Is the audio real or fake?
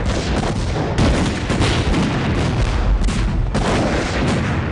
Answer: real